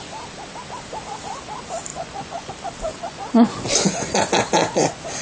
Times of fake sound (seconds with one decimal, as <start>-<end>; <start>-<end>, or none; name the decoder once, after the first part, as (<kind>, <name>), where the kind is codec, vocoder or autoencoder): 1.9-2.5 (vocoder, Vocos); 2.9-3.6